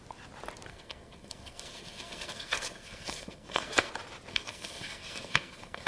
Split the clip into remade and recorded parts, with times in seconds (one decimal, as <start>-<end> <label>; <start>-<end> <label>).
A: 0.0-0.7 recorded; 0.7-3.9 remade; 3.9-4.3 recorded; 4.3-5.9 remade